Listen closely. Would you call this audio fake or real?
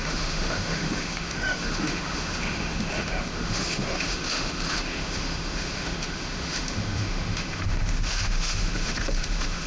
fake